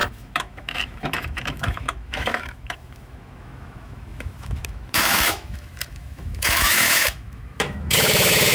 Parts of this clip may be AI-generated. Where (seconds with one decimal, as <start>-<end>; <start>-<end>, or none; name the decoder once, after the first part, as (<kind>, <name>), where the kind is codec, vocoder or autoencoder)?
0.0-8.5 (autoencoder, DAC-VAE)